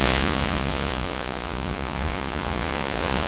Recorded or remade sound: remade